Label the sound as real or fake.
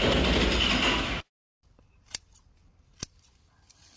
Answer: real